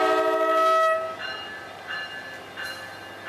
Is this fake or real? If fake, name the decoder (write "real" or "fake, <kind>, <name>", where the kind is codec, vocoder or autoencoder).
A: real